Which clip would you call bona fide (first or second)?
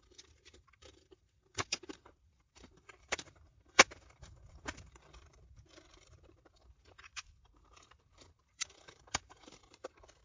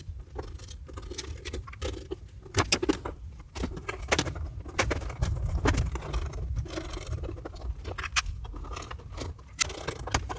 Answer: second